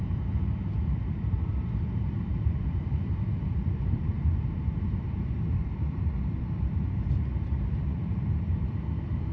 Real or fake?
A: fake